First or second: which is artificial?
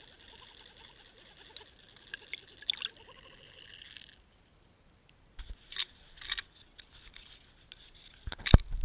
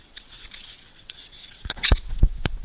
second